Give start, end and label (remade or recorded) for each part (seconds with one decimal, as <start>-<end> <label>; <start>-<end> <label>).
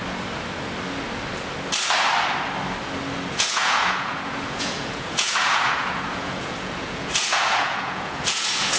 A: 0.0-3.3 recorded; 3.3-8.8 remade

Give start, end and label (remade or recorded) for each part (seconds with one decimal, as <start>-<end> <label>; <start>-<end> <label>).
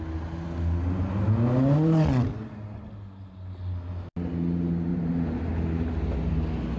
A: 0.0-4.9 recorded; 4.9-5.4 remade; 5.4-6.8 recorded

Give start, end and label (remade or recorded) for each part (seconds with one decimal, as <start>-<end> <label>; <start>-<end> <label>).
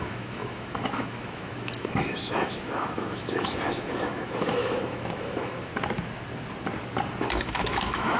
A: 0.0-5.7 remade; 5.7-7.2 recorded; 7.2-8.2 remade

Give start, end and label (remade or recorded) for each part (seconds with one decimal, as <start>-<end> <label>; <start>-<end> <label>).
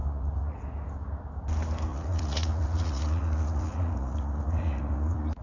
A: 0.0-0.6 remade; 0.6-1.9 recorded; 1.9-5.4 remade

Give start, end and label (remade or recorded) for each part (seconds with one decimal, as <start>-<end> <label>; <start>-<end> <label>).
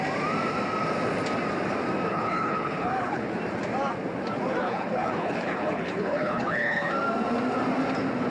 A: 0.0-2.1 recorded; 2.1-3.3 remade; 3.3-4.6 recorded; 4.6-6.9 remade; 6.9-8.3 recorded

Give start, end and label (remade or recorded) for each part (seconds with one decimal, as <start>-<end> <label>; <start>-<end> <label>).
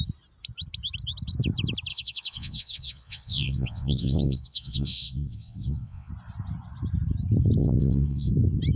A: 0.0-1.9 recorded; 1.9-6.1 remade; 6.1-7.6 recorded; 7.6-8.3 remade; 8.3-8.8 recorded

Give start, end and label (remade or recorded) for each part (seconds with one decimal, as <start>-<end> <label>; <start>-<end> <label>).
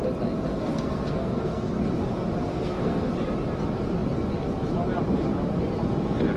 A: 0.0-0.5 recorded; 0.5-1.7 remade; 1.7-2.5 recorded; 2.5-3.1 remade; 3.1-6.4 recorded